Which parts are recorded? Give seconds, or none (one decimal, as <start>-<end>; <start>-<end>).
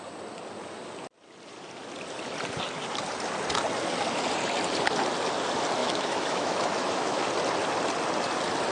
0.0-5.8; 7.3-8.7